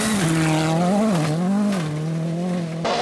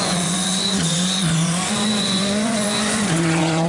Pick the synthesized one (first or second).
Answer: second